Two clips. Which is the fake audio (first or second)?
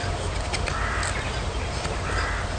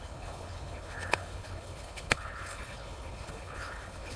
second